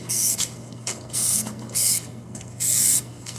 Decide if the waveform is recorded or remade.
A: remade